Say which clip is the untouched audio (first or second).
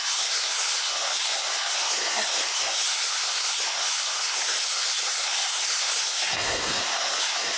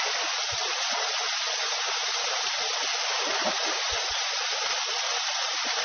second